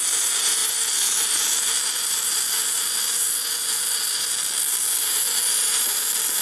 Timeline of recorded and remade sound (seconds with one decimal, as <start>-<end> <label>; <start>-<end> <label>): 0.0-6.4 recorded